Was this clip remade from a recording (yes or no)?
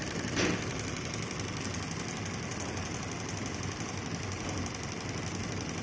no